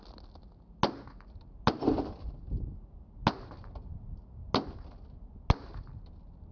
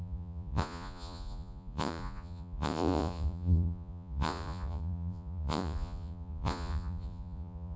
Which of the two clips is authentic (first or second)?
first